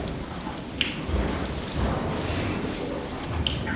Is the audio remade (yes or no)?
no